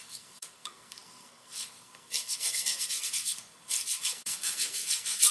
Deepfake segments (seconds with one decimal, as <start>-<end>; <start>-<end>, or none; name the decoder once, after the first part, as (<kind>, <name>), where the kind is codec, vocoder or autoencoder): 0.0-5.3 (codec, SNAC)

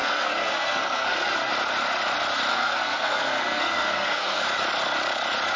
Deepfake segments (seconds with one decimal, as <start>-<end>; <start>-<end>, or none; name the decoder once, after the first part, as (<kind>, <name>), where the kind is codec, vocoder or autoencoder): 0.0-1.5 (codec, SNAC); 2.5-4.4

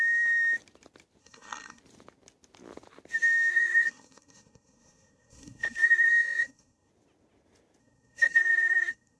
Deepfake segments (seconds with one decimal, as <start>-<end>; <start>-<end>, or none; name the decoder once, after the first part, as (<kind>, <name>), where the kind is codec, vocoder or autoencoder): 1.2-1.8 (codec, SNAC); 3.5-6.9; 7.8-9.2

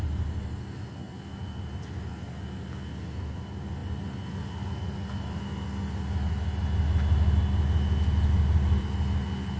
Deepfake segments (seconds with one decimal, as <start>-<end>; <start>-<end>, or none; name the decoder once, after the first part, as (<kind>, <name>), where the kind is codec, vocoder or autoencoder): none

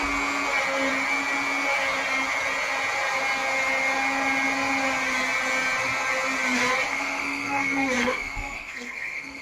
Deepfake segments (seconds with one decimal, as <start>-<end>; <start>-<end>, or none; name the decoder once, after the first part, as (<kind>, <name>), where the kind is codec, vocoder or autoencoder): 6.9-9.4 (codec, SNAC)

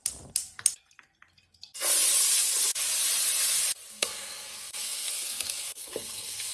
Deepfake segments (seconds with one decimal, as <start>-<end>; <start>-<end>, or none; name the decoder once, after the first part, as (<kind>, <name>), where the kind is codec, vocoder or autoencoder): 3.9-6.5 (codec, SNAC)

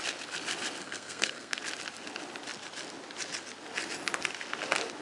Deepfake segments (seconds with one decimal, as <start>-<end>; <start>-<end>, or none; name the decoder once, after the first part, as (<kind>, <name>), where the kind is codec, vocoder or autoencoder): 0.8-1.6 (codec, SNAC)

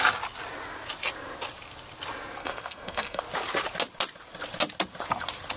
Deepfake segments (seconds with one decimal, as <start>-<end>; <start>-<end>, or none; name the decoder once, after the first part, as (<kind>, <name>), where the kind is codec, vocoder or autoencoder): 2.4-3.2 (codec, SNAC)